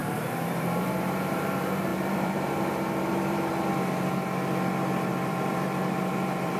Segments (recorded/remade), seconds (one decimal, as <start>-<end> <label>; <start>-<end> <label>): 0.0-3.5 remade; 3.5-5.1 recorded; 5.1-6.6 remade